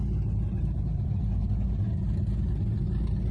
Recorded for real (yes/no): yes